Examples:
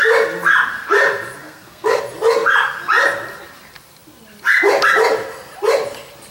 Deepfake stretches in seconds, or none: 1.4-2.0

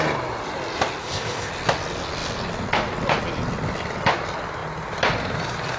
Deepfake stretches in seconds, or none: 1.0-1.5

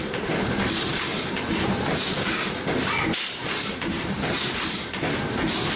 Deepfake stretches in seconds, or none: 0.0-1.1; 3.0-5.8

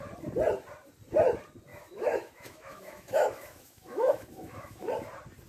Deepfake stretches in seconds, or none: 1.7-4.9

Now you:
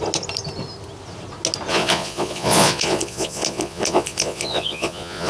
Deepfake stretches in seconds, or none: 1.7-5.3

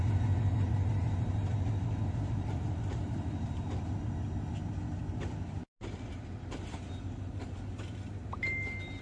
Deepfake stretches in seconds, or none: 0.7-4.5

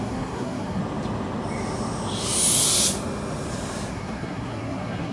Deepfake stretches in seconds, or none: 0.0-0.8; 3.9-5.1